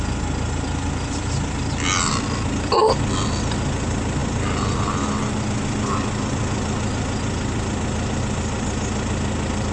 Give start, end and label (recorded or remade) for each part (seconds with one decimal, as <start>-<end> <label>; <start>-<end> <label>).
0.0-9.7 recorded